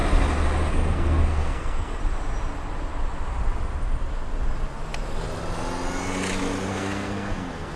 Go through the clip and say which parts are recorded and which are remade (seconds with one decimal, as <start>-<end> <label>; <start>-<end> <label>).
0.0-0.7 recorded; 0.7-2.0 remade; 2.0-6.7 recorded; 6.7-7.8 remade